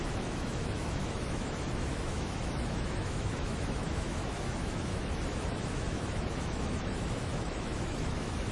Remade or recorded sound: remade